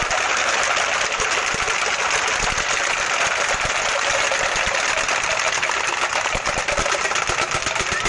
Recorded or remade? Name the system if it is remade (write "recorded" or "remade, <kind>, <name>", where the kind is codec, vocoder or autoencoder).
recorded